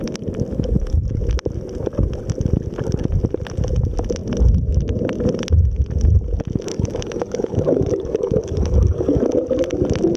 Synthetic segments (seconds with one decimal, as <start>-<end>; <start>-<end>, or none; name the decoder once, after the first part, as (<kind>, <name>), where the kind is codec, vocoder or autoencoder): 0.5-1.1 (codec, DAC); 6.7-9.2